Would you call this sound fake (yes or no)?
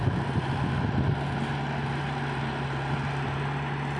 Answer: no